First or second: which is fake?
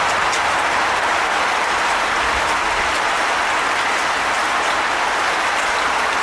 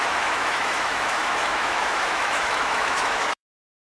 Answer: second